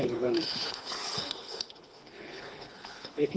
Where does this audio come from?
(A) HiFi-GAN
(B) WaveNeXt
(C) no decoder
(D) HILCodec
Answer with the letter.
D